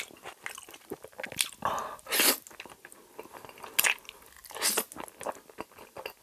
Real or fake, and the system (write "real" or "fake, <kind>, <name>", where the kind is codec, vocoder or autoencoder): real